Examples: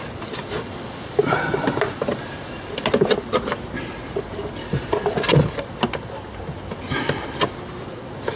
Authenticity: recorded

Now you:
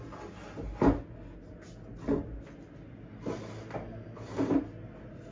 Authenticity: recorded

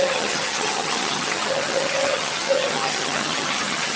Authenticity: remade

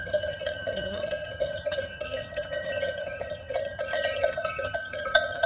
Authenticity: remade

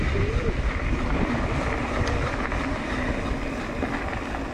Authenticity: recorded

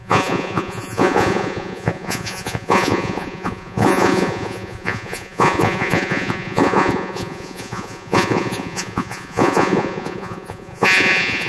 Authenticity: remade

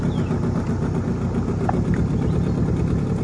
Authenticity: recorded